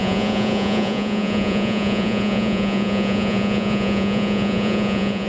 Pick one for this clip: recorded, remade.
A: remade